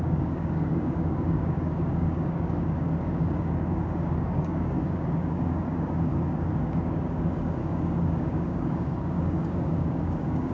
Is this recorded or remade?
remade